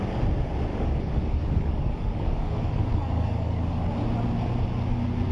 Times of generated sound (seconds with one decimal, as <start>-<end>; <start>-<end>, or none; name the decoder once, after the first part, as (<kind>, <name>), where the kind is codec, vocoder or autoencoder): 0.7-3.9 (codec, DAC)